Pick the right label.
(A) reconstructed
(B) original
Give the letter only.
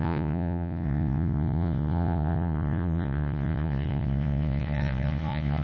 A